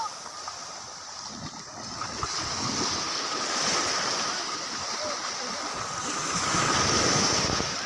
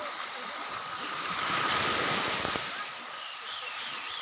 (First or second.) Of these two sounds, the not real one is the second